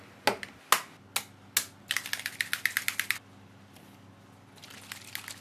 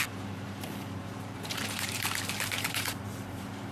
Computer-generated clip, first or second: second